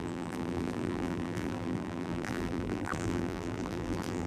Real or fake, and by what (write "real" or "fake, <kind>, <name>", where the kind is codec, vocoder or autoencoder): fake, vocoder, BigVGAN v2